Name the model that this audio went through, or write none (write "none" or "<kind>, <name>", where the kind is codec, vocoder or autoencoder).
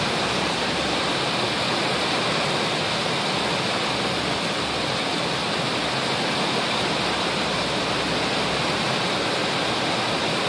none